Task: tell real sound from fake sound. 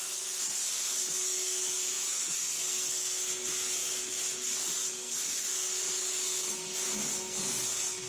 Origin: fake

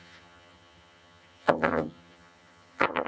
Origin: fake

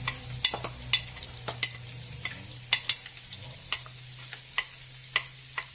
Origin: real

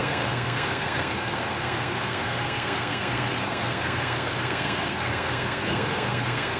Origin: fake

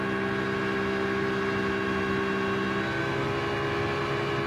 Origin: real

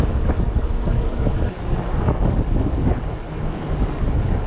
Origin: fake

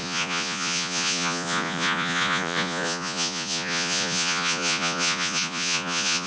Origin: fake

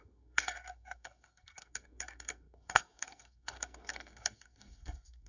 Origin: fake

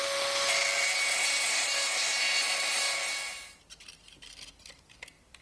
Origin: real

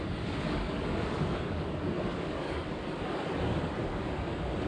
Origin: fake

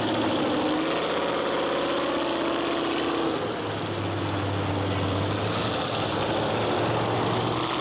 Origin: real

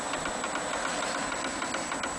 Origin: real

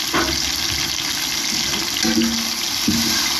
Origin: real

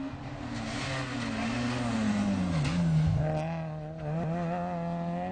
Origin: real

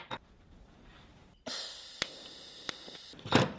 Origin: real